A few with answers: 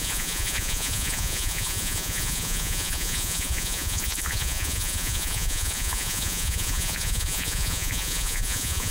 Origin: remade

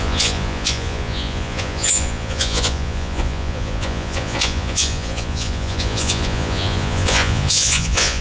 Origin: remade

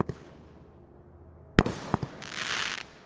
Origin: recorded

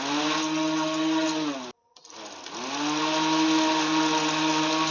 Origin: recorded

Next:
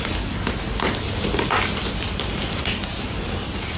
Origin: recorded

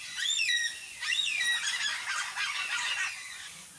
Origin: remade